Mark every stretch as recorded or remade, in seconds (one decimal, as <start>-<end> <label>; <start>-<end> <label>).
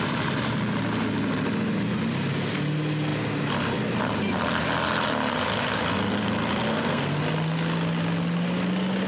0.0-6.7 recorded; 6.7-7.2 remade; 7.2-9.1 recorded